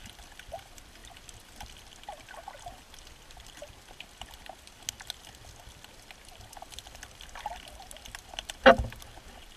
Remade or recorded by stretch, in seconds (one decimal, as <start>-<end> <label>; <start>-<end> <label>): 0.0-9.6 recorded